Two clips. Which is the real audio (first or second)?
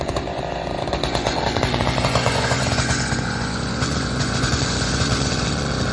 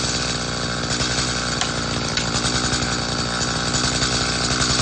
second